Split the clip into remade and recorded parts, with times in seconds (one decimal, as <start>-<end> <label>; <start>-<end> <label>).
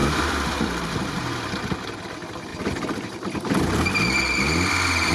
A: 0.0-1.4 remade; 1.4-2.5 recorded; 2.5-3.5 remade; 3.5-5.1 recorded